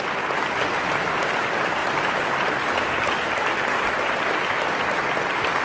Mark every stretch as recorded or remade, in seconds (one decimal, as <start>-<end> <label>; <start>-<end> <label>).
0.0-5.6 recorded